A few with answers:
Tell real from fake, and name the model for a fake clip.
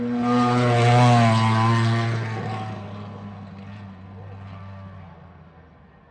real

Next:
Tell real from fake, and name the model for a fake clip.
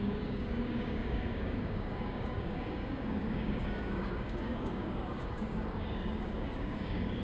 fake, codec, DAC